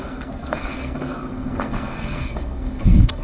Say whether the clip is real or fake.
fake